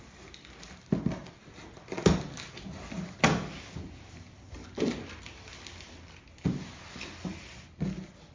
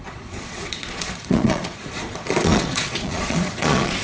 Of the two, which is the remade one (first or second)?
second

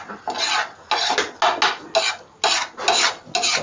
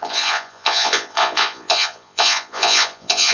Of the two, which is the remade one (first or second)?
second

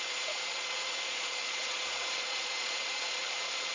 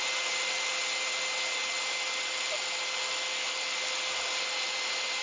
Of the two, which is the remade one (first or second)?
first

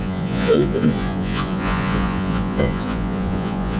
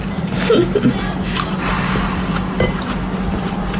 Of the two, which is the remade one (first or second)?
first